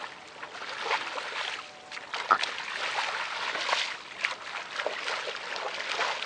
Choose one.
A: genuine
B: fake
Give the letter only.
A